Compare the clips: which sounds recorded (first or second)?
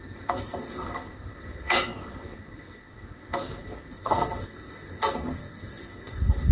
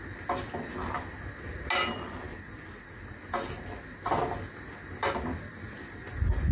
second